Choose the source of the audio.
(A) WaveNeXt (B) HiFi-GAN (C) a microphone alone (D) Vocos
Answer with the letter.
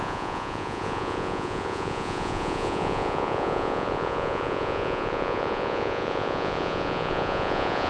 D